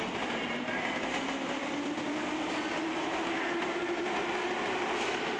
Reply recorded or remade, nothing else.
recorded